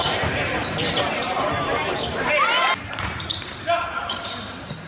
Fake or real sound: fake